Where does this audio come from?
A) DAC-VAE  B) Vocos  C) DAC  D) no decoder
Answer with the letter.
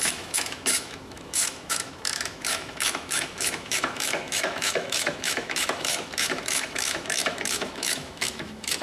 A